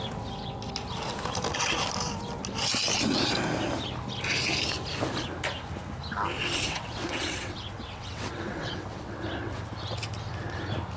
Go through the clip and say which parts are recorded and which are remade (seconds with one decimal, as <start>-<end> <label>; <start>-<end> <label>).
0.0-6.4 recorded; 6.4-9.6 remade; 9.6-11.0 recorded